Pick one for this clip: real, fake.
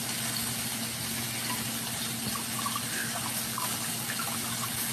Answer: real